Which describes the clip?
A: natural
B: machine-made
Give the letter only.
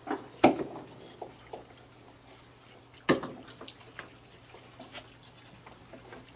A